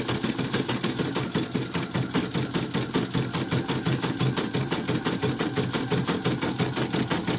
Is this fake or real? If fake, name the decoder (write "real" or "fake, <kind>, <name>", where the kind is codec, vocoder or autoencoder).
real